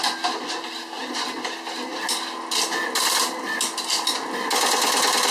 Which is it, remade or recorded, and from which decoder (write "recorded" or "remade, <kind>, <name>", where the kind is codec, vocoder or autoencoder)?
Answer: recorded